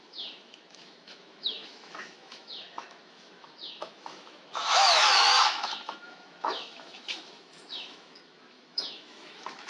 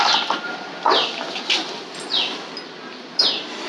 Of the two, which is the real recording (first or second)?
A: second